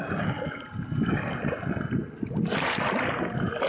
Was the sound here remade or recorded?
recorded